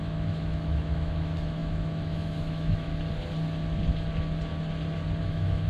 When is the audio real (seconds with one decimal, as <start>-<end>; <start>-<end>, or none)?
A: 2.9-5.2